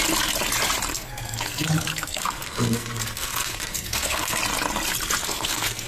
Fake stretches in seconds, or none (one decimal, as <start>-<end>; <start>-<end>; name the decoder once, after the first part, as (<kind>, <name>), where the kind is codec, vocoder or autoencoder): 0.9-4.4 (codec, SNAC); 5.2-5.9

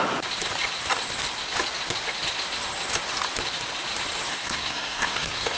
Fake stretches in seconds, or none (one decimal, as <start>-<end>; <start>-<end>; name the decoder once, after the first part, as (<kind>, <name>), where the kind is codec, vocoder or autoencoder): 4.3-5.6 (codec, SNAC)

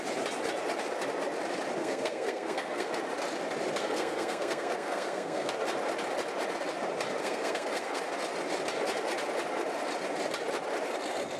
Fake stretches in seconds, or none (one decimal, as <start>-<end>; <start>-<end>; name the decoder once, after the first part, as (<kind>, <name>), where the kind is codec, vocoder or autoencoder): 1.8-2.9 (codec, SNAC); 3.8-5.5; 7.2-8.0

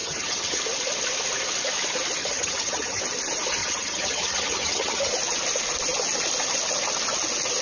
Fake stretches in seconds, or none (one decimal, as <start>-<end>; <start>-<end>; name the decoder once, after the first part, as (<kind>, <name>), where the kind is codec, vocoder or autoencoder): 0.0-0.6 (vocoder, HiFi-GAN); 2.2-3.0; 3.6-5.1

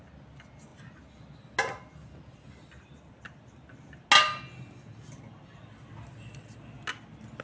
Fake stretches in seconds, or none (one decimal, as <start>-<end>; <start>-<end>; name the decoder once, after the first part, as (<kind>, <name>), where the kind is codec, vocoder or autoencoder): none

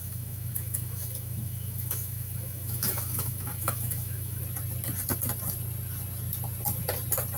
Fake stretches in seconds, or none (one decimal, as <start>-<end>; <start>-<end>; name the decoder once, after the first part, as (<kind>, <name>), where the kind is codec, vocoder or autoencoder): 0.0-4.4 (autoencoder, DAC-VAE)

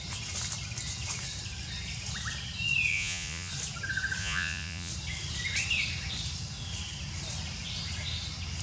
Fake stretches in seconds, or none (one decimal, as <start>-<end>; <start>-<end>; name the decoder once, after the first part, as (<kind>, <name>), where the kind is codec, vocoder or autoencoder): 2.9-3.5 (vocoder, Vocos); 4.2-4.9